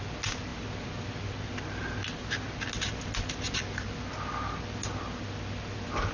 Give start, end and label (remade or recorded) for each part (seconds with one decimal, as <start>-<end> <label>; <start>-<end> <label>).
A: 0.0-6.1 recorded